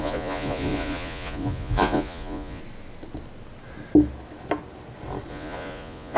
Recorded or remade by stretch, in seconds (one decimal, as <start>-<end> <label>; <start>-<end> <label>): 0.0-2.6 remade; 2.6-5.3 recorded; 5.3-6.2 remade